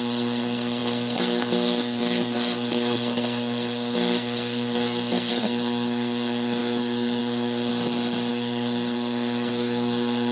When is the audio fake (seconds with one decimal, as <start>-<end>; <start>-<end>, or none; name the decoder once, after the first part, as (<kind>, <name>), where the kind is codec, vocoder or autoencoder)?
0.0-7.7 (codec, SNAC); 8.3-10.3